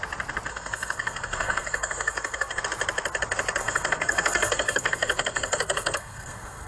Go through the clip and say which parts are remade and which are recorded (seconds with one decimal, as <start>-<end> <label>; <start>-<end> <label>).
0.0-0.5 recorded; 0.5-2.6 remade; 2.6-3.6 recorded; 3.6-6.7 remade